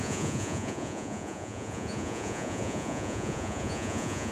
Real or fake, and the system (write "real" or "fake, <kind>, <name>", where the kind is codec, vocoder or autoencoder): fake, vocoder, Vocos